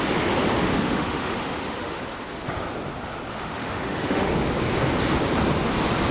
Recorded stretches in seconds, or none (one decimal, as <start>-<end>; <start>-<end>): 0.0-0.7; 2.0-3.3; 4.3-6.1

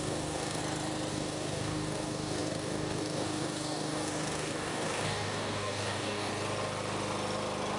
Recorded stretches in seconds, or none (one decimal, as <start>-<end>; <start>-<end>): 0.6-1.1; 6.3-7.8

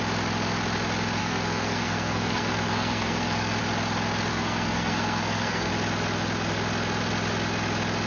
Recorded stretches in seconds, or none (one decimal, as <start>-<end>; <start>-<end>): 0.0-1.2; 3.6-4.3; 5.7-8.1

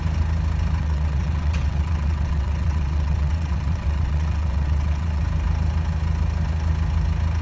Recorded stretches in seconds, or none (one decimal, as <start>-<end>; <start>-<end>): 0.0-0.8; 5.2-7.4

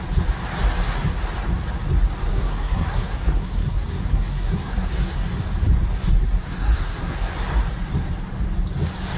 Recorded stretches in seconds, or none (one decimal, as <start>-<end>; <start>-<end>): 0.0-2.3; 5.4-6.4; 7.3-9.2

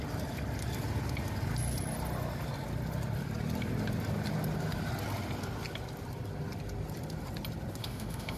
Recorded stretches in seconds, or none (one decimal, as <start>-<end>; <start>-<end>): 0.0-7.8

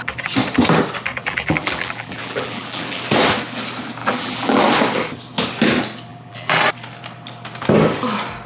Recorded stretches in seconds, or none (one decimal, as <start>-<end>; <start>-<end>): 0.0-1.2; 3.0-4.0; 4.6-6.1; 6.6-8.5